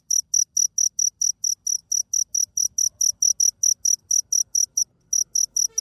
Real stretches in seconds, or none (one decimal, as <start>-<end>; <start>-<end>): 0.0-5.8